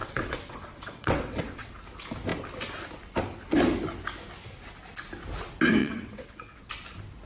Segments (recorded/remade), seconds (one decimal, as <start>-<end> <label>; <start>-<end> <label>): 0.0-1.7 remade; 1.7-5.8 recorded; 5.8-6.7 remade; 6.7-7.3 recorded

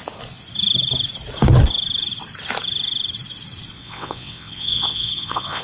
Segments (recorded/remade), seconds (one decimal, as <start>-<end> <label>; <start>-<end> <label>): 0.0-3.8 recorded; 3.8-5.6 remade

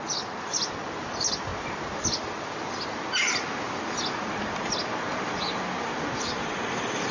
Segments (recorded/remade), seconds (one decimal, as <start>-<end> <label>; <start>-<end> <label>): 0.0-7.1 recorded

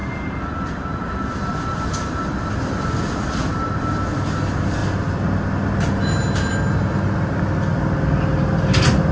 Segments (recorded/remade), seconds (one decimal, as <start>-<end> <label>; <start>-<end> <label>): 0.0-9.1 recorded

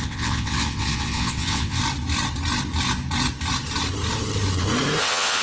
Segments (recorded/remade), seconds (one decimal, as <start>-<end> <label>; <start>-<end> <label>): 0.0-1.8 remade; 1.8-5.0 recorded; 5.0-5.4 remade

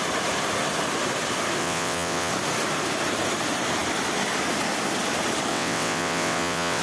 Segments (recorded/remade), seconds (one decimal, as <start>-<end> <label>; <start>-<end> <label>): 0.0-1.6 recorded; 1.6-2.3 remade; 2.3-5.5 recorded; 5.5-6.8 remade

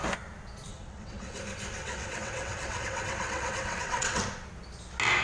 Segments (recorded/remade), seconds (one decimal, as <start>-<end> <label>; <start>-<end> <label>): 0.0-0.7 recorded; 0.7-1.4 remade; 1.4-1.8 recorded; 1.8-4.2 remade; 4.2-5.2 recorded